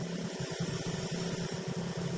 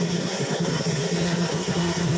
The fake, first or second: second